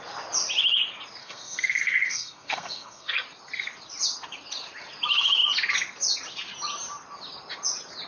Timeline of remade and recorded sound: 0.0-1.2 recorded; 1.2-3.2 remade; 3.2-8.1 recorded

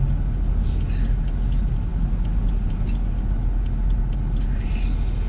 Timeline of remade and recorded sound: 0.0-5.3 recorded

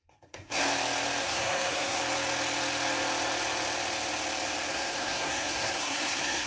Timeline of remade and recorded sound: 0.0-0.6 remade; 0.6-1.2 recorded; 1.2-2.0 remade; 2.0-4.7 recorded; 4.7-6.5 remade

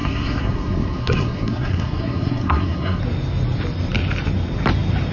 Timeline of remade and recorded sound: 0.0-3.0 remade; 3.0-5.1 recorded